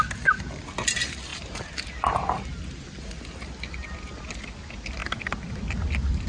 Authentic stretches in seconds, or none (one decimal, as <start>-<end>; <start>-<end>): 0.0-6.3